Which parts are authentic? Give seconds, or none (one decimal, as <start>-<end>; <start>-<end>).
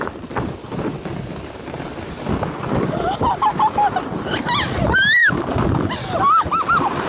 0.0-7.1